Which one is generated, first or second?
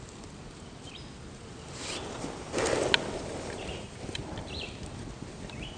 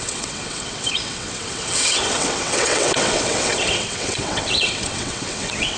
second